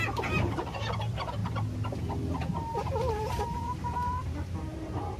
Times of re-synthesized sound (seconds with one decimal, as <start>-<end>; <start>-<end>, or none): 0.0-1.4; 3.1-5.2